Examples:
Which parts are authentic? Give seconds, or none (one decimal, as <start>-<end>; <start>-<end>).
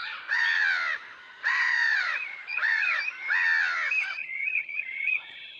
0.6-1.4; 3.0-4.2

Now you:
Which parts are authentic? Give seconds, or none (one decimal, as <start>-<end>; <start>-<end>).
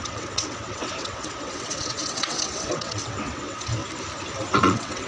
3.8-4.4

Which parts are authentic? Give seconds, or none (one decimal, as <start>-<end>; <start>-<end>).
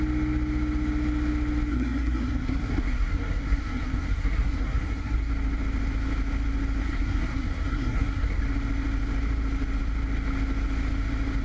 0.0-1.7; 5.3-6.8; 8.4-11.4